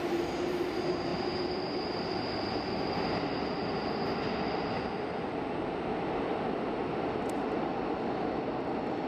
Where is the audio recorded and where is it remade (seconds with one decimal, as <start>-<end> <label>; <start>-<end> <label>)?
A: 0.0-1.1 recorded; 1.1-2.7 remade; 2.7-9.1 recorded